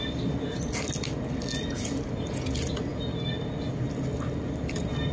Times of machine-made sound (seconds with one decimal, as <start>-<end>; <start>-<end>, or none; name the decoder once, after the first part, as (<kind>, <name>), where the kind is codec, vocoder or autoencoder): none